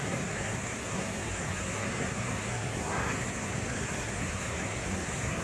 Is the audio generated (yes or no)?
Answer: yes